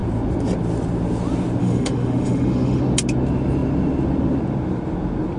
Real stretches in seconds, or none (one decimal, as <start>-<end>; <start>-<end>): 0.0-1.6; 2.8-5.4